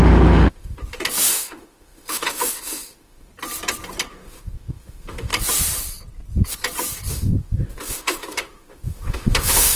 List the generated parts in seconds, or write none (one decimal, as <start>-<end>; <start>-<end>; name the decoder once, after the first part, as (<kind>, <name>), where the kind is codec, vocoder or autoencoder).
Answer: 0.0-0.8 (autoencoder, DAC-VAE); 1.3-3.3; 4.1-5.3; 7.1-9.8